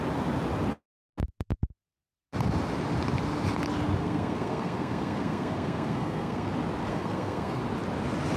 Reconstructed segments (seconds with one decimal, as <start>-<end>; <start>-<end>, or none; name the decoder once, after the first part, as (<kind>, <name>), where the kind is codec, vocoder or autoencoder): 4.0-6.5 (codec, SNAC); 6.9-7.6